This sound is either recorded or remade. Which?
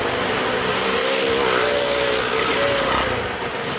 recorded